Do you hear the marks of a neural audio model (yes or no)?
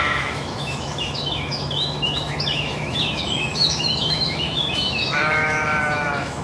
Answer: yes